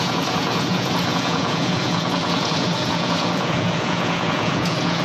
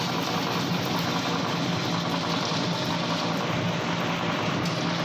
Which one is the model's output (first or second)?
first